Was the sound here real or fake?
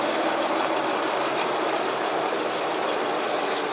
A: real